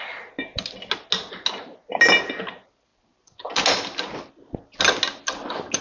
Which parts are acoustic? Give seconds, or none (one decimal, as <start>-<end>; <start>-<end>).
0.0-5.8